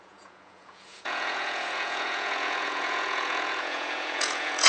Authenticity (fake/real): fake